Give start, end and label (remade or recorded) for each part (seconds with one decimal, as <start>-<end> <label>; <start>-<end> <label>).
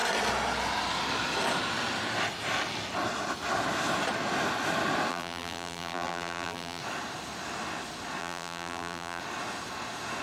0.0-5.1 recorded; 5.1-6.8 remade; 6.8-8.2 recorded; 8.2-9.2 remade; 9.2-10.2 recorded